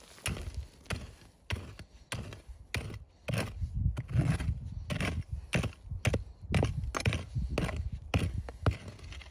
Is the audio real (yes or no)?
yes